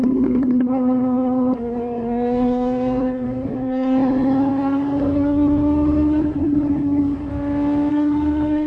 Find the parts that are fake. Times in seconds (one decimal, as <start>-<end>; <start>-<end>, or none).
0.0-7.3; 7.9-8.7